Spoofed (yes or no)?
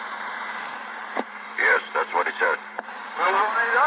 yes